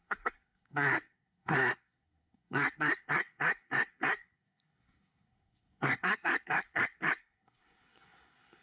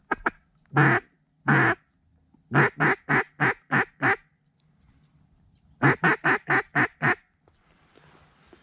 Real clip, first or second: second